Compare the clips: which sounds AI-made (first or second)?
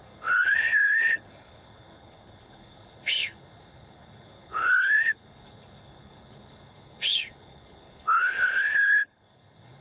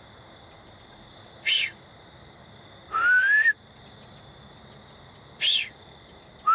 first